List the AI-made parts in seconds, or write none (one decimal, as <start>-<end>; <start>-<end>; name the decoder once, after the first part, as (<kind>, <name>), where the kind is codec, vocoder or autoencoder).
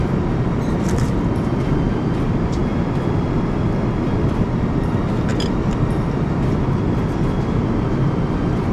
0.0-2.6 (vocoder, BigVGAN v2); 4.1-8.7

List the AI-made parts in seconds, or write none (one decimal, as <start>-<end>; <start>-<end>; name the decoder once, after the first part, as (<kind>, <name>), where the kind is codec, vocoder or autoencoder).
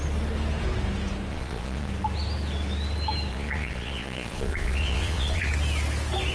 1.3-1.9 (vocoder, Vocos); 3.3-5.5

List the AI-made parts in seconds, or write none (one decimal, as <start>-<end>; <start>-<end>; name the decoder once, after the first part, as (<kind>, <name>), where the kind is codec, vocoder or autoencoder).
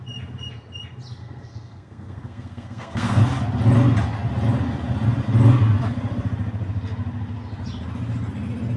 1.2-3.2 (codec, SNAC)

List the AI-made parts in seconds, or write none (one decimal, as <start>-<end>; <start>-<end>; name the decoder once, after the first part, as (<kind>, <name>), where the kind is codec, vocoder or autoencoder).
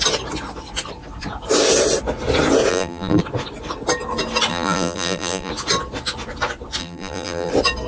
2.7-3.2 (vocoder, BigVGAN v2); 4.5-5.5; 6.8-7.5